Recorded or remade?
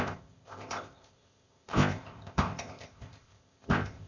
remade